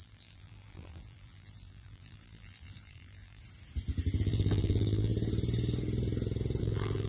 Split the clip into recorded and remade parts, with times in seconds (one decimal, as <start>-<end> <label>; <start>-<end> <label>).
0.0-3.4 remade; 3.4-4.2 recorded; 4.2-5.1 remade; 5.1-6.6 recorded; 6.6-7.1 remade